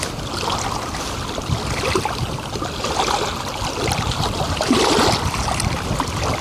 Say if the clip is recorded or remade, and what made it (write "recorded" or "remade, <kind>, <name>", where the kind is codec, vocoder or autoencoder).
recorded